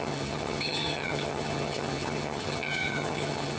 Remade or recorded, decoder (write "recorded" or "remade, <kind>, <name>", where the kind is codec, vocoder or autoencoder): remade, vocoder, HiFi-GAN